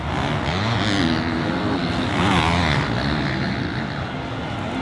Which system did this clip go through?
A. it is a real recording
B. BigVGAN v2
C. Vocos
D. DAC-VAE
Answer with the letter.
A